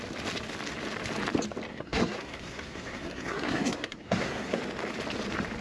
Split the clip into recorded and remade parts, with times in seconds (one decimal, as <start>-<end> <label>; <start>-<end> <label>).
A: 0.0-1.7 recorded; 1.7-4.6 remade; 4.6-5.6 recorded